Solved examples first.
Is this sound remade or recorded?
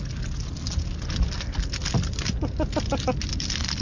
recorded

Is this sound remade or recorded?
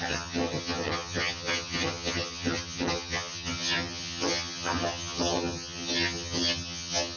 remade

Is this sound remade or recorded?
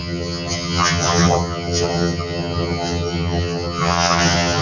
remade